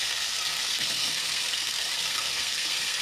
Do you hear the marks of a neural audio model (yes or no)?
yes